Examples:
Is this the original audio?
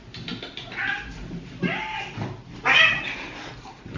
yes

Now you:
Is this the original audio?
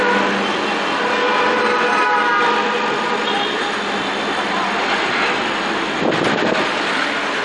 yes